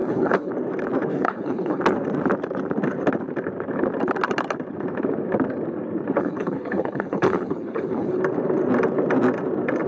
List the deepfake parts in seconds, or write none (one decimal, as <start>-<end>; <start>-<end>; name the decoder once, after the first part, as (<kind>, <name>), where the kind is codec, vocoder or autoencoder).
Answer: 0.0-0.5 (codec, HILCodec); 1.1-1.8; 6.2-8.2